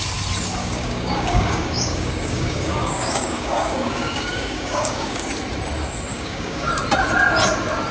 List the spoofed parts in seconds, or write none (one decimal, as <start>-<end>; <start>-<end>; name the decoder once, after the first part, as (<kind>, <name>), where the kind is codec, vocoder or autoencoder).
0.6-5.3 (codec, DAC); 6.1-6.7